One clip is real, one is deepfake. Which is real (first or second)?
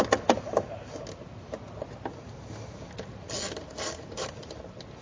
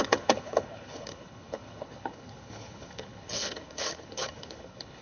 first